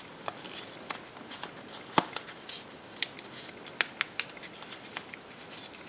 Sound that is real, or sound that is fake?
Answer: real